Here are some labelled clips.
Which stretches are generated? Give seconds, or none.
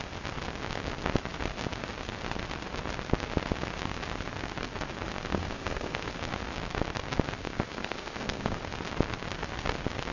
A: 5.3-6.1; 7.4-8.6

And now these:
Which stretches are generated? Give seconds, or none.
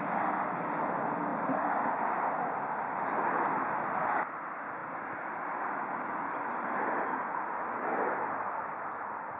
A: 1.3-2.0; 4.8-6.9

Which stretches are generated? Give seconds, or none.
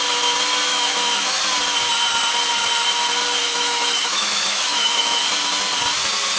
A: 0.7-1.4; 3.4-5.2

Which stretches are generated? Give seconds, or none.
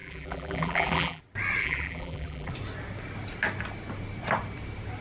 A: 0.0-1.2; 1.6-2.5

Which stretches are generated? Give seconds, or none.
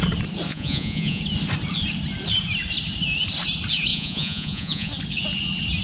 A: 0.5-1.2; 3.9-4.9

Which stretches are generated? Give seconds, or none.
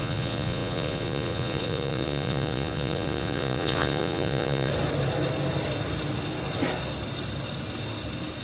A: 0.0-4.7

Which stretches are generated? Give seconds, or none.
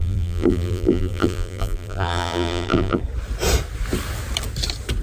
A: 0.0-3.0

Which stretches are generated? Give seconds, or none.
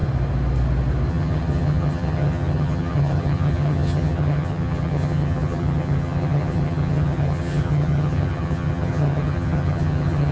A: 1.1-10.3